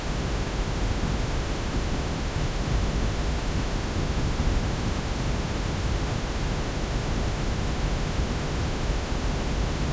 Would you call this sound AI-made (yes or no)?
yes